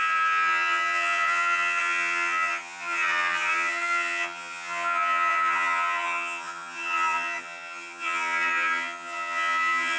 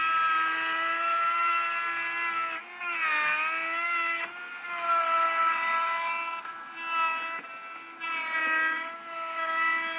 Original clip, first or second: second